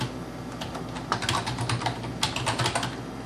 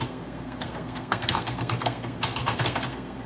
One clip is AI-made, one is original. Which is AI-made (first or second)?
second